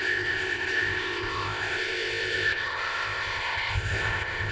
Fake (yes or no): yes